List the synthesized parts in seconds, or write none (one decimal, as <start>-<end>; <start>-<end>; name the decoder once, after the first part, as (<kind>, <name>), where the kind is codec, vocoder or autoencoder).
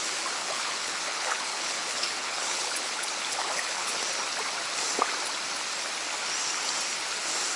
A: 0.4-4.0 (codec, HILCodec)